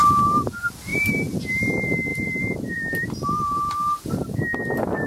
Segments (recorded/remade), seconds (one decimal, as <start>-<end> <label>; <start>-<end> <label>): 0.0-0.9 recorded; 0.9-1.5 remade; 1.5-2.1 recorded; 2.1-4.3 remade; 4.3-5.1 recorded